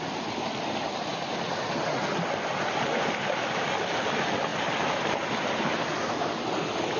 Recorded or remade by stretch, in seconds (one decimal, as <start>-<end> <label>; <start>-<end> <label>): 0.0-7.0 recorded